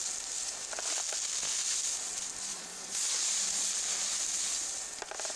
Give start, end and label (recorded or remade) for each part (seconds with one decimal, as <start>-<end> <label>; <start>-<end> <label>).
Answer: 0.0-2.5 recorded; 2.5-3.7 remade; 3.7-5.4 recorded

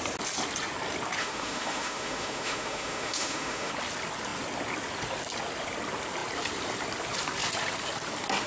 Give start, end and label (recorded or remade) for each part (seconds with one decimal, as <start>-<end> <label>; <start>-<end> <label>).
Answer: 0.0-1.2 recorded; 1.2-3.7 remade; 3.7-8.5 recorded

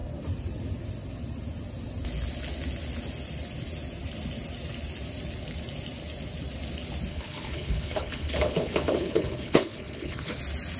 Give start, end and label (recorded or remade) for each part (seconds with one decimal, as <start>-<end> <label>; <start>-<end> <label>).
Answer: 0.0-7.1 recorded; 7.1-10.4 remade; 10.4-10.8 recorded